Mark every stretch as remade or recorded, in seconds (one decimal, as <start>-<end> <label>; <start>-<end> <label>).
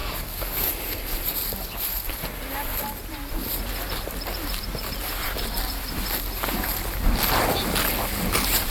0.0-0.7 remade; 0.7-8.7 recorded